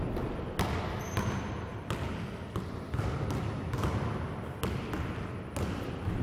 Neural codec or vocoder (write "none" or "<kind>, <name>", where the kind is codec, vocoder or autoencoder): none